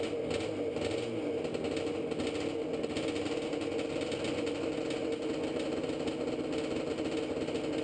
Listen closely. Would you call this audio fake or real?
real